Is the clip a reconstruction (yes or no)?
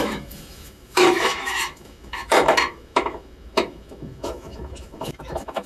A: yes